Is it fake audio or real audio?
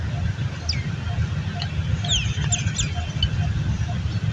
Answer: real